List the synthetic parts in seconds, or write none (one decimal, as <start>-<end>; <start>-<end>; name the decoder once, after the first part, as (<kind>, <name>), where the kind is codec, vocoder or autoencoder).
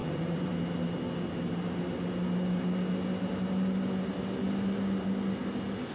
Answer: 0.0-0.5 (vocoder, Vocos)